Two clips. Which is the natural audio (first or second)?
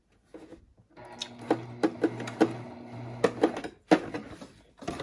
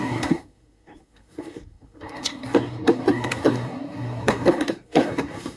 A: first